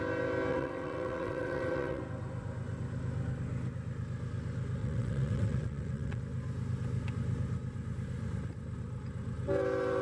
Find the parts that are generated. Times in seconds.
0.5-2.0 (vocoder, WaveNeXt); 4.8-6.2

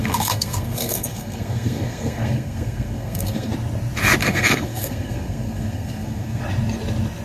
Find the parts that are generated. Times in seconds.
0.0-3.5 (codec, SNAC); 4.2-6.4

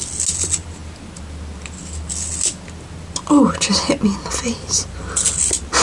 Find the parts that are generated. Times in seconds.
none